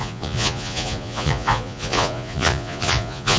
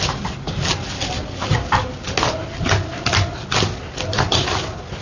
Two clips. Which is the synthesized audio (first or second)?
first